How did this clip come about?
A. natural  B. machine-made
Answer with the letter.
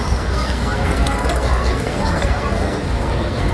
B